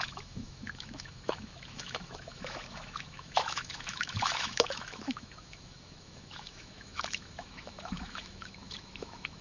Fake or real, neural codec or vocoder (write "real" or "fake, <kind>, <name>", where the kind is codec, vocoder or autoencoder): fake, autoencoder, DAC-VAE